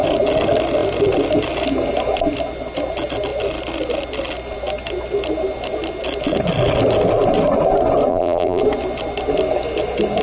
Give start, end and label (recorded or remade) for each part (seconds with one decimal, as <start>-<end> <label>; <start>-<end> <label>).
0.0-8.1 recorded; 8.1-8.6 remade; 8.6-10.2 recorded